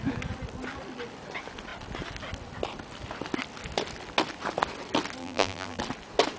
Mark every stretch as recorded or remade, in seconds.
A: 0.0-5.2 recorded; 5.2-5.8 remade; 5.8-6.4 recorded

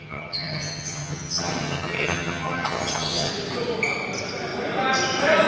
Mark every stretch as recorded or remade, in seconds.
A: 0.0-3.3 remade; 3.3-5.5 recorded

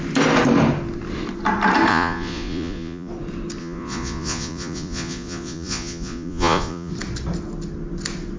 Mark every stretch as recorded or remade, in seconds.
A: 0.0-1.9 recorded; 1.9-3.1 remade; 3.1-3.6 recorded; 3.6-6.9 remade; 6.9-8.4 recorded

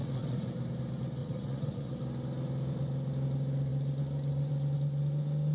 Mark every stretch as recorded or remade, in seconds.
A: 0.0-0.5 remade; 0.5-1.2 recorded; 1.2-1.9 remade; 1.9-5.5 recorded

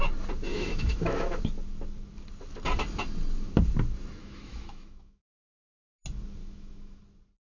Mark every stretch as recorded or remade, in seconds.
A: 0.0-0.5 recorded; 0.5-1.4 remade; 1.4-4.2 recorded; 4.2-5.2 remade; 5.2-6.4 recorded; 6.4-7.0 remade; 7.0-7.4 recorded

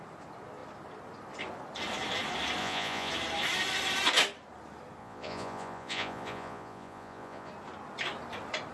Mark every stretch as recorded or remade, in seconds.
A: 0.0-2.6 recorded; 2.6-3.1 remade; 3.1-5.0 recorded; 5.0-7.5 remade; 7.5-8.7 recorded

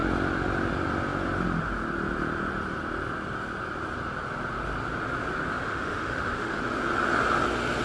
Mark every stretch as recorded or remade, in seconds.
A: 0.0-5.5 recorded; 5.5-6.6 remade; 6.6-7.8 recorded

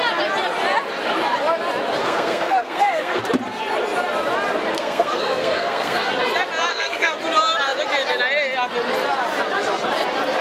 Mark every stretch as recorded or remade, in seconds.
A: 0.0-2.0 recorded; 2.0-3.2 remade; 3.2-4.7 recorded; 4.7-6.1 remade; 6.1-6.7 recorded; 6.7-7.2 remade; 7.2-10.4 recorded